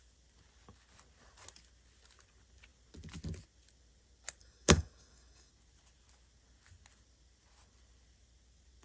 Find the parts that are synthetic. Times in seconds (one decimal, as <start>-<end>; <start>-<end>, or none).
4.4-5.5